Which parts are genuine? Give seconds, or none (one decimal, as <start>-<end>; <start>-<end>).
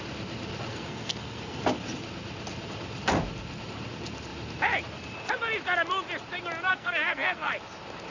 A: 0.0-0.7; 1.6-6.7; 7.5-8.1